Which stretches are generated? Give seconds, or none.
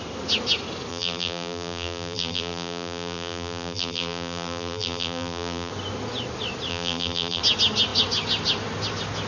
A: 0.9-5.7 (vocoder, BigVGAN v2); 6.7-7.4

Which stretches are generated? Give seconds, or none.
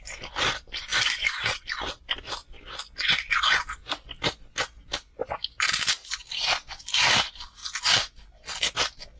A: 0.0-2.4 (vocoder, BigVGAN v2); 5.6-7.6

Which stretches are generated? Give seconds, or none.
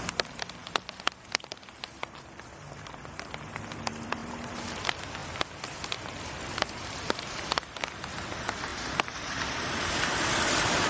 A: 0.0-4.2 (vocoder, BigVGAN v2); 4.8-5.2; 6.3-10.9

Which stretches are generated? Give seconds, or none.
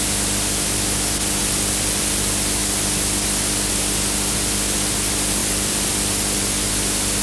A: 1.4-2.0 (vocoder, BigVGAN v2); 5.4-6.7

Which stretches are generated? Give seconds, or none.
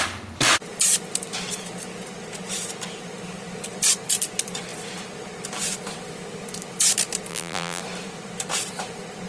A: 7.3-7.8 (vocoder, BigVGAN v2)